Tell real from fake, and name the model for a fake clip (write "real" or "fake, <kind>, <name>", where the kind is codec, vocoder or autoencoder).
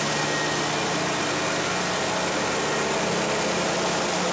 real